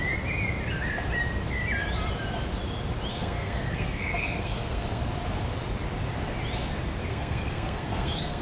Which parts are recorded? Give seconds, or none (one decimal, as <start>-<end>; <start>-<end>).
0.0-3.1; 5.0-7.1